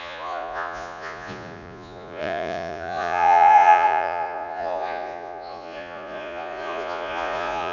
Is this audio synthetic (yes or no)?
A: yes